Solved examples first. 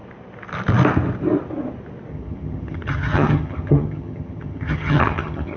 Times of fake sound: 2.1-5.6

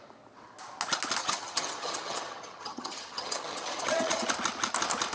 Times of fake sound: 1.2-4.3

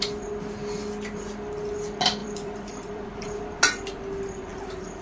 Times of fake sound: 2.2-3.4; 4.5-5.0

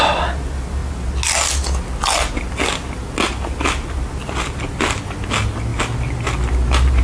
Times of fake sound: none

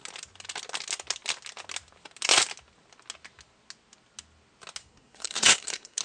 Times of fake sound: 4.8-6.0